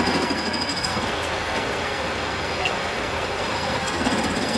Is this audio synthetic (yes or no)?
yes